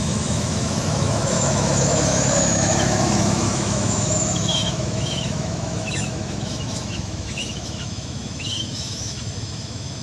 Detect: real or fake fake